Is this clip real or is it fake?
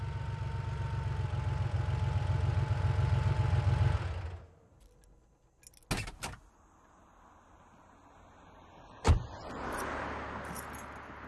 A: real